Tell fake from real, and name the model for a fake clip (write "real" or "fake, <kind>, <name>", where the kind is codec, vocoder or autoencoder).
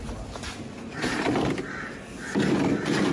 real